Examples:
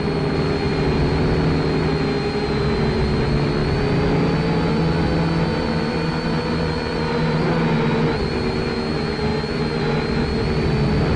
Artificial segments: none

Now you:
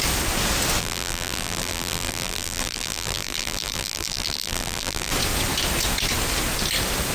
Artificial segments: 0.8-5.1 (vocoder, BigVGAN v2)

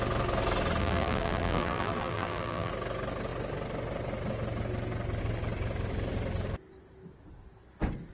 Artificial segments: 0.8-2.7 (vocoder, BigVGAN v2)